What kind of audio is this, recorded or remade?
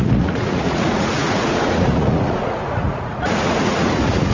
remade